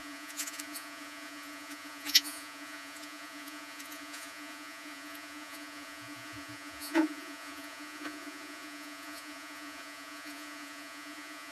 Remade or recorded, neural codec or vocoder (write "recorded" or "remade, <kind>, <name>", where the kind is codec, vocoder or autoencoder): remade, vocoder, Vocos